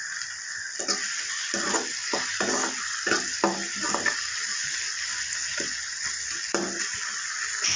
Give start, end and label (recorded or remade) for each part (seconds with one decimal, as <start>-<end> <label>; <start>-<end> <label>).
0.0-7.8 recorded